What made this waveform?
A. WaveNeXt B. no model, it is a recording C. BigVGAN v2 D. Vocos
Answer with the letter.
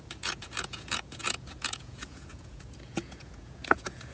D